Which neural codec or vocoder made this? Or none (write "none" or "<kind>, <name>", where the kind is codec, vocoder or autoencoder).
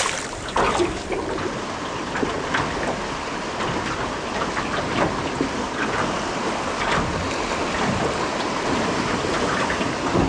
none